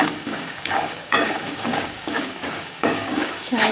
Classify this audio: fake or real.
fake